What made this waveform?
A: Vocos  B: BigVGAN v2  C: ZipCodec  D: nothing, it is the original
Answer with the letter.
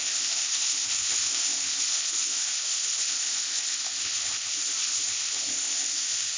C